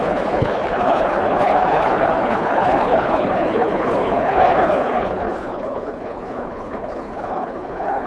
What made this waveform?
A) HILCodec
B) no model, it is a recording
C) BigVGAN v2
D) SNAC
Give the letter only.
A